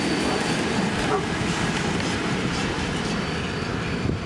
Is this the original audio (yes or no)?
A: yes